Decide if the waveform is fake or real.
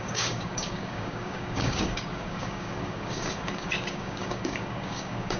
fake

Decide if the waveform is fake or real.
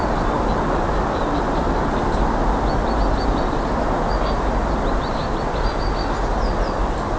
real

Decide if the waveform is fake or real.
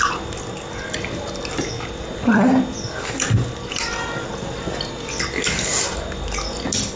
real